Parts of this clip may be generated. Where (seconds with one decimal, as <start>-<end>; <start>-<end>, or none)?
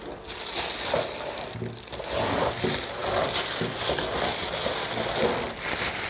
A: none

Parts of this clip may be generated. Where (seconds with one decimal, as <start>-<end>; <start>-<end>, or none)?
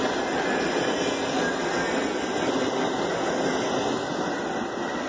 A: none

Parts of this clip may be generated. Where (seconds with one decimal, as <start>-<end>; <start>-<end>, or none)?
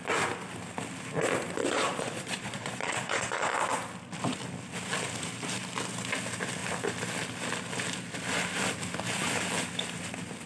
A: 1.6-3.5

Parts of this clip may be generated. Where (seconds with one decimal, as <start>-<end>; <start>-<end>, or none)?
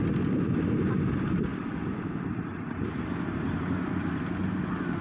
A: none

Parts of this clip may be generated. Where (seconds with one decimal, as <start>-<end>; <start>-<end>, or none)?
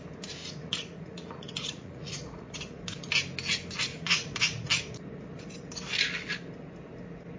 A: 0.4-2.8; 3.9-4.7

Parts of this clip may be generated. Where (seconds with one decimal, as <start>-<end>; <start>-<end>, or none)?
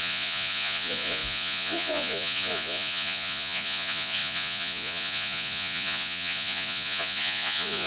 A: 0.0-7.9